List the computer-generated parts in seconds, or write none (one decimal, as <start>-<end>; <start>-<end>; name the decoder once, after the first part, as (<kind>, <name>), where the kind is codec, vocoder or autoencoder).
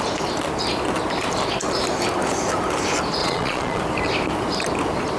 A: 3.2-3.8 (vocoder, Vocos)